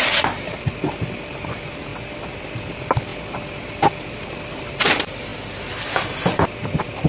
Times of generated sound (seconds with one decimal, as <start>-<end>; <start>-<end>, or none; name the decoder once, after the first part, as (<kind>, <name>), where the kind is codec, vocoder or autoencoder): 0.0-1.9 (vocoder, BigVGAN v2); 2.4-3.1; 4.2-7.1